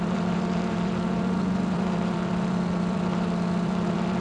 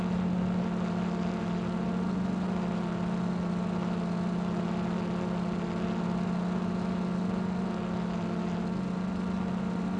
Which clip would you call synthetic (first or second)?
first